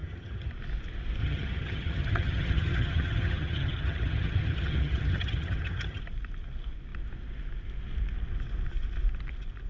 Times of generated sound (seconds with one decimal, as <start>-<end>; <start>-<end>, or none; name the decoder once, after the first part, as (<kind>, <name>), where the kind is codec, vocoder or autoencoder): 0.0-0.5 (vocoder, HiFi-GAN); 1.2-6.0